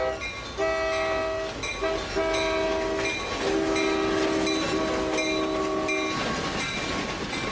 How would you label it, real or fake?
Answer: real